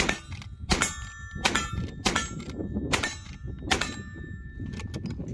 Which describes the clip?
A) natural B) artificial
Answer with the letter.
A